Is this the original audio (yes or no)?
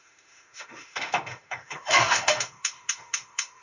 no